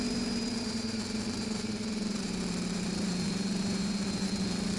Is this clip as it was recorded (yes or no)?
no